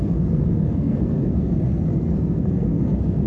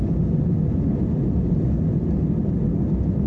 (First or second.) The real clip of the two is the second